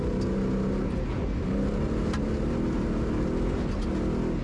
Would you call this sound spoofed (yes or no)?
no